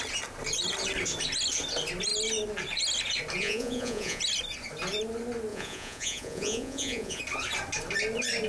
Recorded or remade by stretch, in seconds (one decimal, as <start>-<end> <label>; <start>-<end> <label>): 0.0-3.4 recorded; 3.4-4.2 remade; 4.2-5.5 recorded; 5.5-7.2 remade; 7.2-8.5 recorded

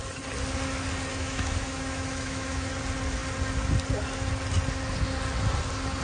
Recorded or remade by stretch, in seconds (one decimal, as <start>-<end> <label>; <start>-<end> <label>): 0.0-1.1 recorded; 1.1-2.7 remade; 2.7-6.0 recorded